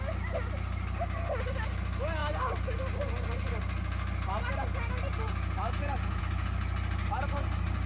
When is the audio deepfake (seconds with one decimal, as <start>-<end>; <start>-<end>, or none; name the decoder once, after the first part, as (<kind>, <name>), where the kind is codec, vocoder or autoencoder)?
none